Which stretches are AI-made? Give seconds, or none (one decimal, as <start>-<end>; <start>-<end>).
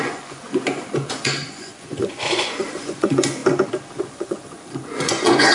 0.0-3.4; 4.0-5.5